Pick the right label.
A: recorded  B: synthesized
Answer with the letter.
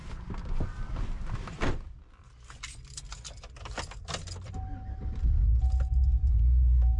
A